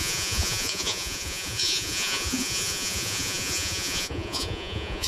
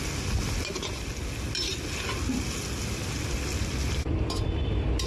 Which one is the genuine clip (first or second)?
second